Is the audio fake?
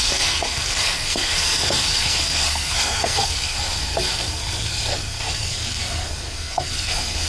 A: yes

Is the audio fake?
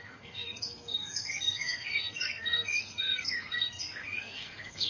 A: yes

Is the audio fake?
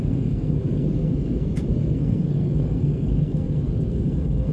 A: yes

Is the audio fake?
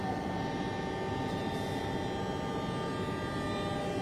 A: no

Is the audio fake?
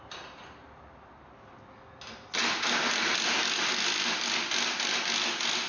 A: no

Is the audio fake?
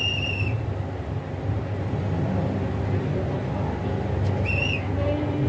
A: no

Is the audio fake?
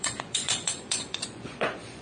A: yes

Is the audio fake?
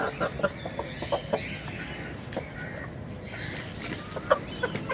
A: no